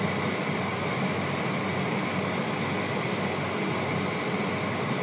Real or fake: real